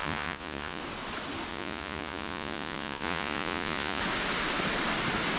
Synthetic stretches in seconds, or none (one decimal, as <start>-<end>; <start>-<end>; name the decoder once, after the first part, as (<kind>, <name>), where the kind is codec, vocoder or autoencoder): 0.0-0.8 (vocoder, Vocos); 1.5-4.0